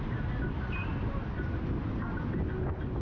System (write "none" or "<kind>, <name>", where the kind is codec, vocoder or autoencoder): none